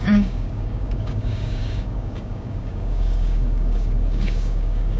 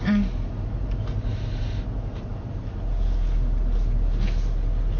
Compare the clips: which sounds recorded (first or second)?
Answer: second